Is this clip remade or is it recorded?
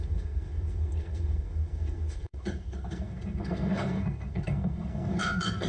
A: remade